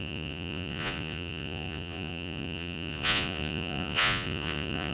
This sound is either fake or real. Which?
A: fake